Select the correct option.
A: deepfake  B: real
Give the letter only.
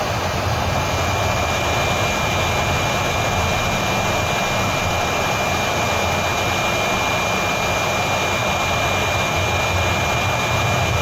B